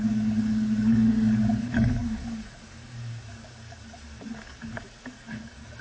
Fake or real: fake